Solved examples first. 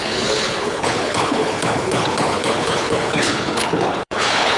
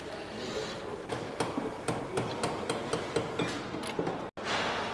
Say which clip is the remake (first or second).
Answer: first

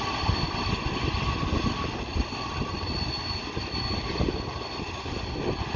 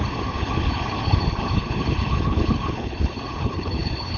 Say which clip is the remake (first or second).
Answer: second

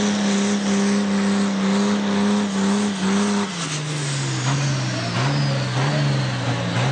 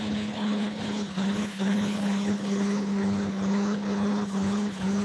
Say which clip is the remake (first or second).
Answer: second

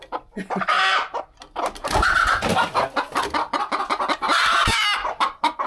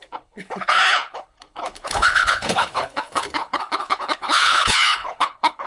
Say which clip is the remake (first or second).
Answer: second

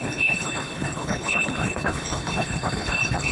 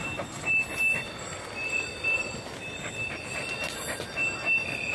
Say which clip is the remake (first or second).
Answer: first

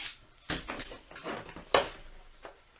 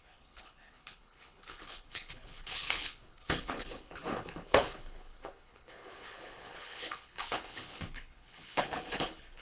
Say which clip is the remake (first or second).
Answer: second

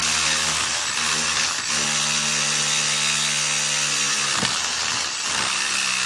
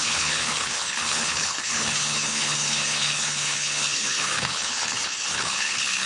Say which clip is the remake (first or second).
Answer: second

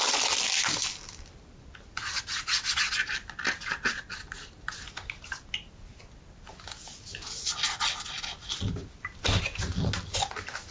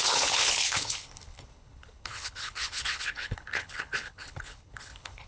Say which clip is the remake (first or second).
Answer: second